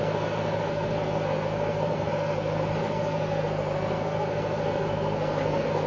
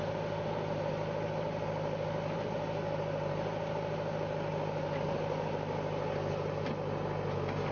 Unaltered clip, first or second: second